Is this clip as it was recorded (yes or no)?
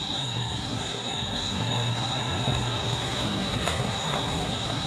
no